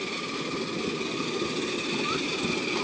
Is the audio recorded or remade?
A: recorded